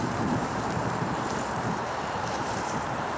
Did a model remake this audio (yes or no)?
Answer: yes